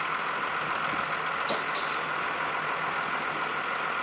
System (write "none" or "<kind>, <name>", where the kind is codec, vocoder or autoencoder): none